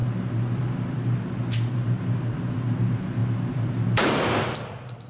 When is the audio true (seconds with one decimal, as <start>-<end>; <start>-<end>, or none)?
0.0-5.1